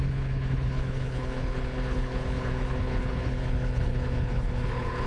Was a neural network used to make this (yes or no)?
yes